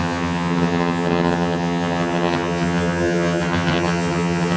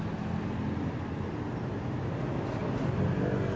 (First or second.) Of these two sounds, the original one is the second